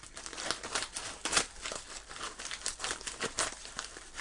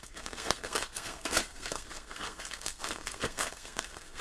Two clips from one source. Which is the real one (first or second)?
first